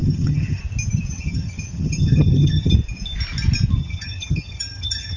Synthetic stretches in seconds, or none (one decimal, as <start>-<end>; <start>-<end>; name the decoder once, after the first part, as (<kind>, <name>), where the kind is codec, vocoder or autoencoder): 0.0-0.6 (vocoder, HiFi-GAN); 1.1-2.7; 3.8-5.2